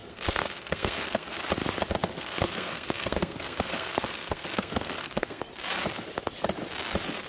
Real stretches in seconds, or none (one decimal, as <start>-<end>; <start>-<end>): 1.4-2.0; 5.4-7.3